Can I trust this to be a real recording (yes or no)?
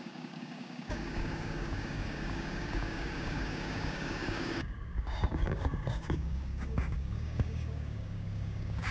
no